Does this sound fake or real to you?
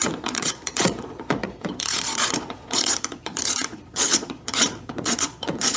fake